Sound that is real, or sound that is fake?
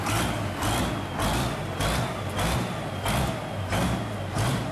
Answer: real